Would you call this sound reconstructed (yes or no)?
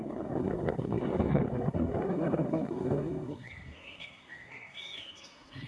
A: yes